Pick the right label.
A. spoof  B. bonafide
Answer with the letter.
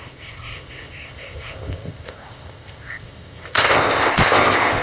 A